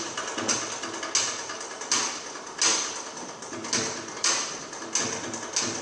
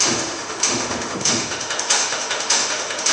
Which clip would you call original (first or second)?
first